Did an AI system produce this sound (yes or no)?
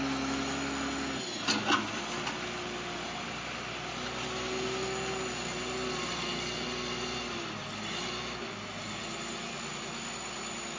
no